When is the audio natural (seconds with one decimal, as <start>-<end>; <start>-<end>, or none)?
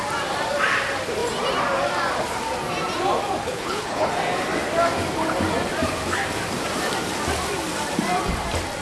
0.0-3.4; 4.1-8.8